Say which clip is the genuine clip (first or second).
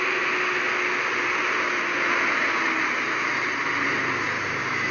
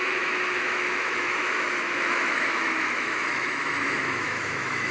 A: first